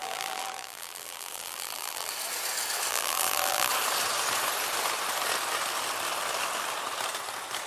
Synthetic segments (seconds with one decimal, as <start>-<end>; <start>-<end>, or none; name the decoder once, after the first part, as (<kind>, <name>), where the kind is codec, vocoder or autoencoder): 0.0-2.1 (vocoder, BigVGAN v2); 2.9-3.7

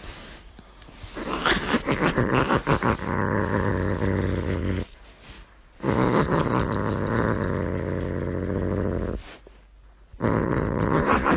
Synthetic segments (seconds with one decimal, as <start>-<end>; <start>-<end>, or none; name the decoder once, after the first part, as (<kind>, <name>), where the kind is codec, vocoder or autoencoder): none